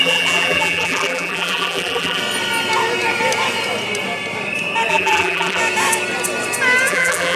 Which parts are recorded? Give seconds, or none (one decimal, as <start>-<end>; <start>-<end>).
2.2-4.9; 5.6-6.9